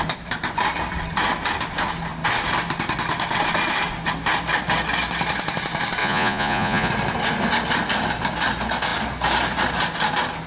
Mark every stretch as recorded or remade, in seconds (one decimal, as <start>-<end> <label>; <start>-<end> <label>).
0.0-6.0 recorded; 6.0-6.9 remade; 6.9-10.5 recorded